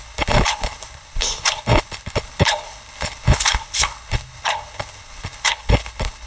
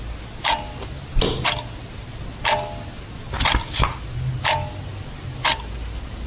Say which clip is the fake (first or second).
first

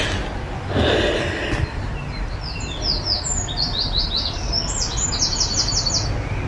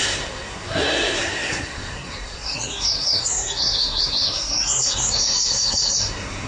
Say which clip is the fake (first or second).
second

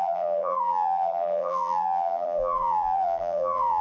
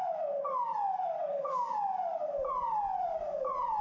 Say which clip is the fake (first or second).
first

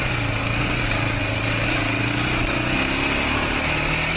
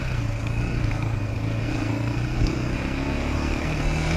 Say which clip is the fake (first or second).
second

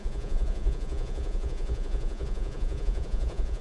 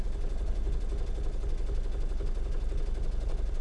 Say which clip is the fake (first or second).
first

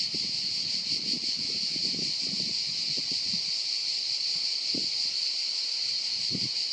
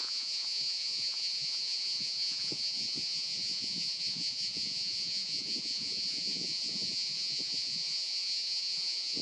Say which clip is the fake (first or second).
second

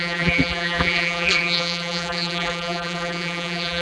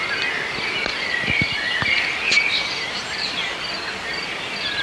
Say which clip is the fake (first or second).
first